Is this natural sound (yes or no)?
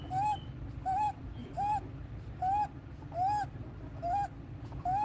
yes